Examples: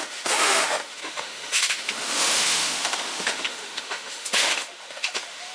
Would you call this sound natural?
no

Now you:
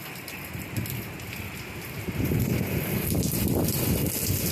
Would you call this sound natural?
yes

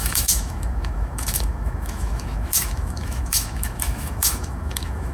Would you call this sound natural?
no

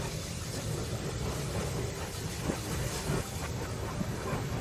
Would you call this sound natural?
yes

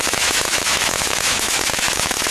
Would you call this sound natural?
no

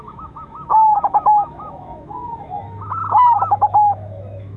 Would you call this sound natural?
no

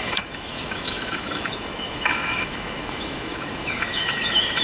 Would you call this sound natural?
no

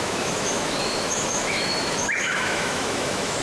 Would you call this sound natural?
no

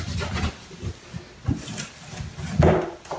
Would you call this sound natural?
yes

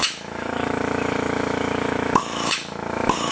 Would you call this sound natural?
no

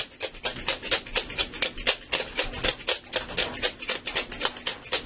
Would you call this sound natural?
yes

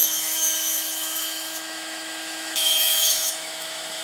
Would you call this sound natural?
no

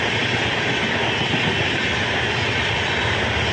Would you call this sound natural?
yes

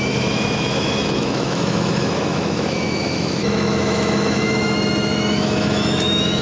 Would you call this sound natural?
no